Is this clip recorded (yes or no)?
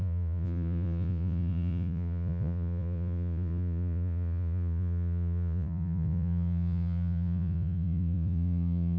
no